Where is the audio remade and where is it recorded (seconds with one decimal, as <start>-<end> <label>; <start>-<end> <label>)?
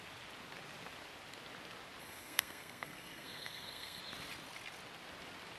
0.0-2.0 recorded; 2.0-4.0 remade; 4.0-5.6 recorded